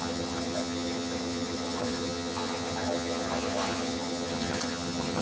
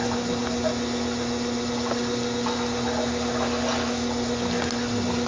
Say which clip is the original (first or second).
second